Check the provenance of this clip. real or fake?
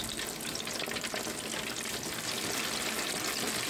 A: real